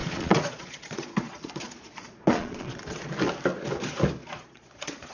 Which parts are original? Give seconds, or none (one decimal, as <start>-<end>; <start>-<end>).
3.1-4.2